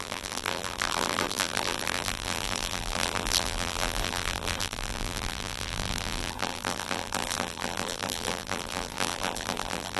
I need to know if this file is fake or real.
fake